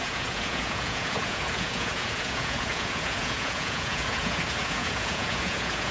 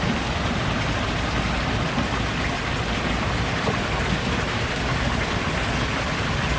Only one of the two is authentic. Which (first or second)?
second